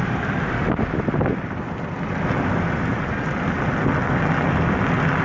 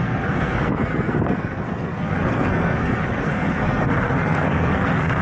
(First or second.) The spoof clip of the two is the second